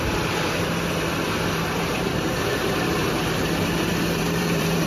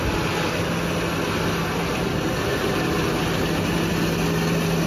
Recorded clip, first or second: second